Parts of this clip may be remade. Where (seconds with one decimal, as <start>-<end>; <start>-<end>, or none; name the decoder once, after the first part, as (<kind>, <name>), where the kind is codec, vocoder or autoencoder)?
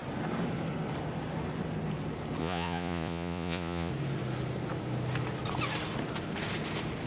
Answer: 2.4-3.9 (vocoder, Vocos)